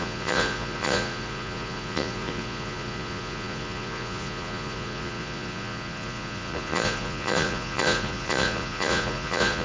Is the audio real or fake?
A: fake